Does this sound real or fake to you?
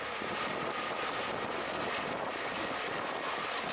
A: real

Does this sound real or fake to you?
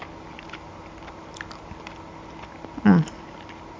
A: real